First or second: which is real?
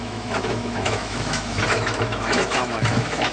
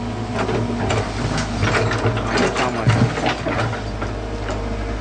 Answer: second